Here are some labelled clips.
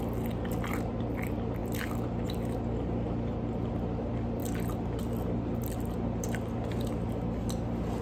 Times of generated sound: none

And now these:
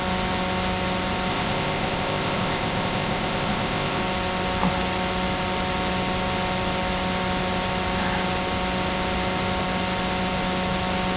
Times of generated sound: 1.3-4.0 (codec, ZipCodec)

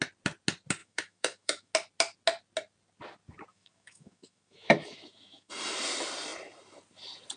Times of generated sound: 0.8-1.7 (autoencoder, DAC-VAE); 3.5-5.5

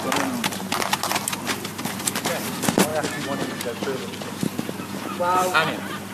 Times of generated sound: none

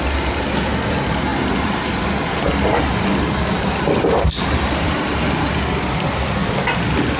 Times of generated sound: 1.3-1.9 (vocoder, BigVGAN v2); 2.5-5.2